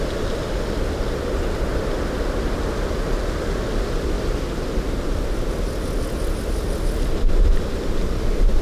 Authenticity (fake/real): real